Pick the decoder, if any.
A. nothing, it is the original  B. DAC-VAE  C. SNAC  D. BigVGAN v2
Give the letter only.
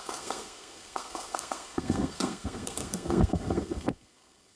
C